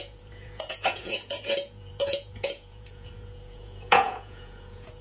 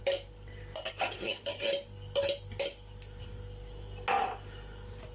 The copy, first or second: first